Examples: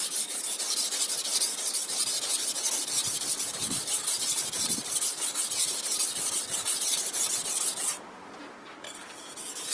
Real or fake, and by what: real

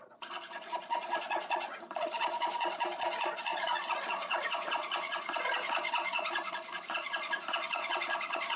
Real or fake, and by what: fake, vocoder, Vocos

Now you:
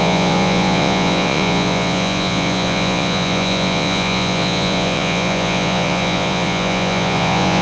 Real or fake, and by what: fake, vocoder, Vocos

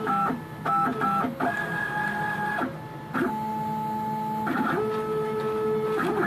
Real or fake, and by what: real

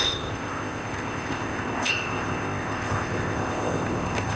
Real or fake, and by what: fake, codec, ZipCodec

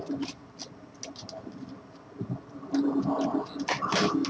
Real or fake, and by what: real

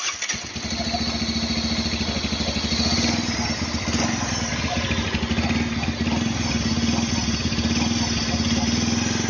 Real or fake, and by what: real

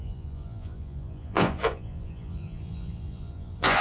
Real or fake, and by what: fake, vocoder, Vocos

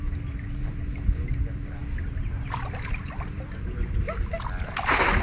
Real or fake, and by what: real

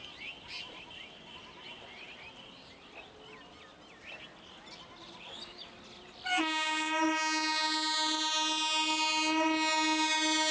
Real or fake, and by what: real